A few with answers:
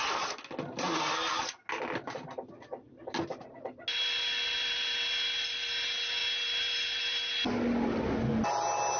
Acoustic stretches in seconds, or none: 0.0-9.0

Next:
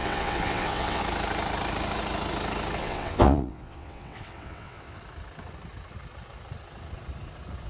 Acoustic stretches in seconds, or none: 1.0-2.8; 5.0-7.7

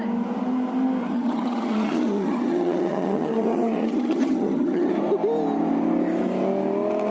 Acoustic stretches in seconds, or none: 0.0-1.0; 4.9-7.1

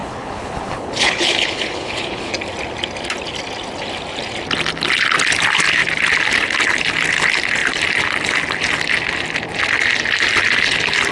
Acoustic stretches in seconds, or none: 2.3-11.1

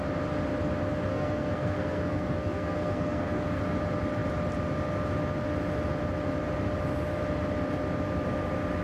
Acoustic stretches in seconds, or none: 0.0-1.1; 3.6-8.8

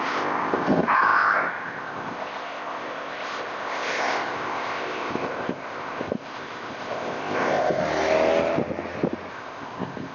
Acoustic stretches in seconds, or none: 7.8-9.3